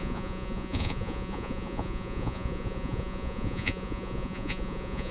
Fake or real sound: fake